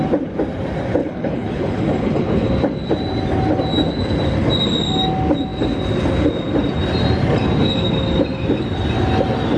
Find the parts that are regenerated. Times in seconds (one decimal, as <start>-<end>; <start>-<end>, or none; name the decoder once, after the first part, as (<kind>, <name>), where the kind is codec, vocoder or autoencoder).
1.0-2.5 (codec, HILCodec)